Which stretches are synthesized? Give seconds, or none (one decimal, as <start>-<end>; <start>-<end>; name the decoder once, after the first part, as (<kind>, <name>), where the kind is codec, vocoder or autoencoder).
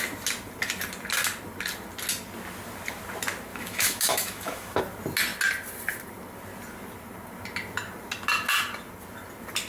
3.5-4.8 (autoencoder, DAC-VAE)